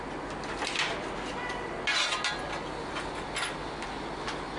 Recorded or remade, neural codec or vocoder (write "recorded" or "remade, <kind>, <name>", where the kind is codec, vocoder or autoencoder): recorded